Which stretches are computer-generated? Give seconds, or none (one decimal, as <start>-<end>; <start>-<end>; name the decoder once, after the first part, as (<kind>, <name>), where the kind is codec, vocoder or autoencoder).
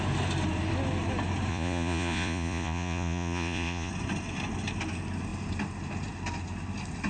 1.5-3.9 (vocoder, Vocos)